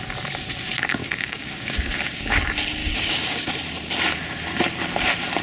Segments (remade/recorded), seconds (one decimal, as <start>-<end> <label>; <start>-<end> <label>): 0.0-1.0 recorded; 1.0-2.4 remade; 2.4-2.8 recorded; 2.8-3.5 remade; 3.5-5.4 recorded